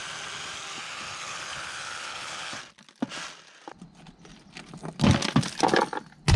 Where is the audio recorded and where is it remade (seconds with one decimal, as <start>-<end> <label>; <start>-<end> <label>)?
0.0-0.8 recorded; 0.8-2.6 remade; 2.6-6.4 recorded